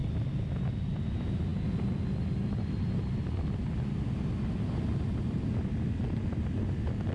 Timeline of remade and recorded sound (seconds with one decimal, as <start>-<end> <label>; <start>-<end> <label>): 0.0-7.1 recorded